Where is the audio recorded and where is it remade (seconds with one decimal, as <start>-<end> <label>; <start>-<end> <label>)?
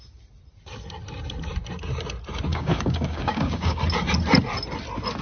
0.0-2.5 recorded; 2.5-3.8 remade; 3.8-5.2 recorded